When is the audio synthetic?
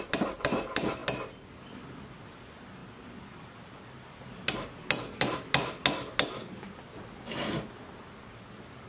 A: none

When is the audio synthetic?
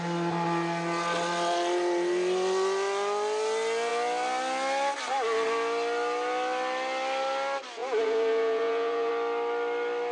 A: 7.8-9.1 (vocoder, Vocos)